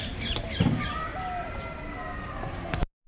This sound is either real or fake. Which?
real